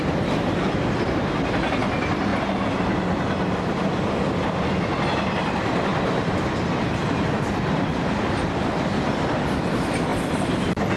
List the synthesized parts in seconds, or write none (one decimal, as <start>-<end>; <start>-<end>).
0.0-2.3; 3.6-5.9; 7.6-10.1